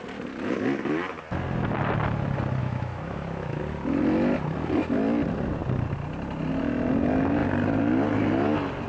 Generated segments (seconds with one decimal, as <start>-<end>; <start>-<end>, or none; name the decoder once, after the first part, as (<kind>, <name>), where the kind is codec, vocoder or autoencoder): 2.6-3.6 (autoencoder, DAC-VAE)